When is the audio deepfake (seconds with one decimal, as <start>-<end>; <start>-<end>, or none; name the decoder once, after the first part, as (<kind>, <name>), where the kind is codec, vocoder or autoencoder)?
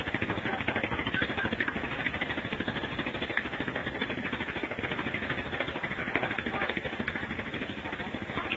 3.8-4.8 (vocoder, BigVGAN v2)